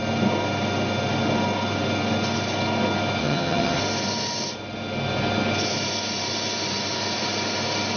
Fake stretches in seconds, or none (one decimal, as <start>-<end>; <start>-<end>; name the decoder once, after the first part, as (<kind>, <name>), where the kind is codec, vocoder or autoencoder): 3.2-3.8 (vocoder, HiFi-GAN)